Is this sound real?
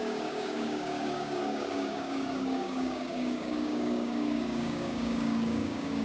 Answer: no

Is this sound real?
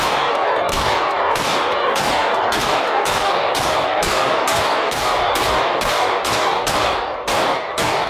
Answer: no